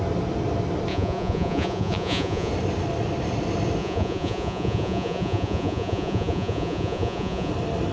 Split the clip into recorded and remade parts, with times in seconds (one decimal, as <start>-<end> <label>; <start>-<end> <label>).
0.0-0.9 recorded; 0.9-2.5 remade; 2.5-3.8 recorded; 3.8-7.5 remade; 7.5-7.9 recorded